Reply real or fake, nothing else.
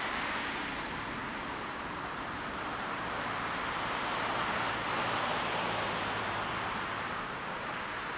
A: fake